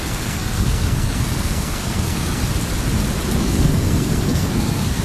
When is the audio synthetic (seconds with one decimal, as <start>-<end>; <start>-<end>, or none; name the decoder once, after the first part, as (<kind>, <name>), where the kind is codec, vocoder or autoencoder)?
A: 0.0-2.4 (codec, SNAC); 3.4-5.0